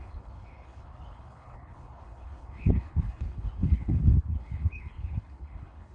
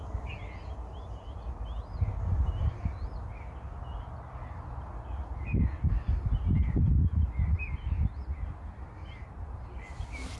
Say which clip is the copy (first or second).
first